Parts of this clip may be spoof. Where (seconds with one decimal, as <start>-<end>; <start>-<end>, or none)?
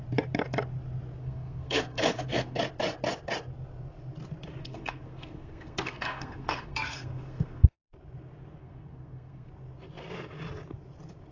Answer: 1.2-2.6; 4.6-7.9; 8.6-9.5